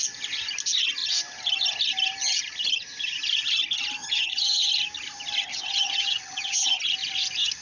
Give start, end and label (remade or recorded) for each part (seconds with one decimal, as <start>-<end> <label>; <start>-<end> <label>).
0.0-4.0 recorded; 4.0-4.7 remade; 4.7-5.5 recorded; 5.5-6.8 remade; 6.8-7.6 recorded